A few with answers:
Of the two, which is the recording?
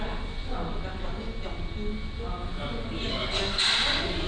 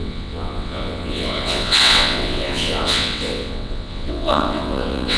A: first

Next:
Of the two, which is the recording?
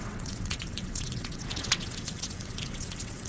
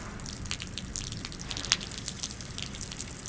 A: second